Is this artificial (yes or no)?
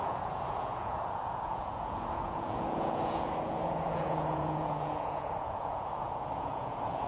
yes